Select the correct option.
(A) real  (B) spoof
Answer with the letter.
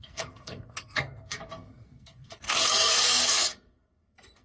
B